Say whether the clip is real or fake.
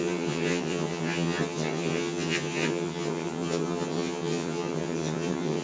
fake